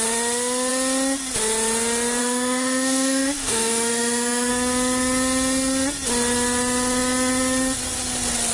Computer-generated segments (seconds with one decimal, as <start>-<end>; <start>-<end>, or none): 2.2-4.5